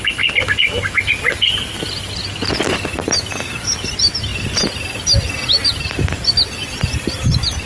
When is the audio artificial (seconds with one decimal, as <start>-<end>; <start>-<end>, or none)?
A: none